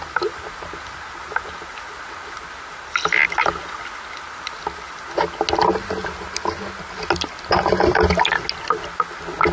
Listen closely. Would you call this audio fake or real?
real